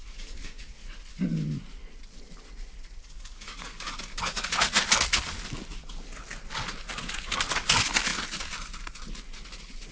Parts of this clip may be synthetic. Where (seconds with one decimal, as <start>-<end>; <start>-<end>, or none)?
0.0-1.0; 3.0-4.5